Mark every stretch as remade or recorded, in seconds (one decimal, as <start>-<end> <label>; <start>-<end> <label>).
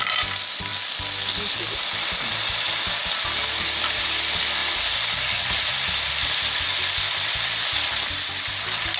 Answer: 0.0-0.7 remade; 0.7-3.4 recorded; 3.4-4.6 remade; 4.6-6.1 recorded; 6.1-9.0 remade